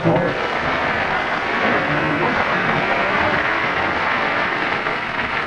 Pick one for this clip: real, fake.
fake